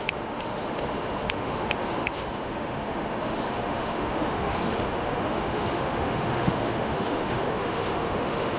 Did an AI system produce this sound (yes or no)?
yes